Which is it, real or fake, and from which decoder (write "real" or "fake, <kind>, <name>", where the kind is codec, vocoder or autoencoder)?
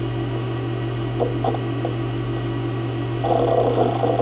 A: real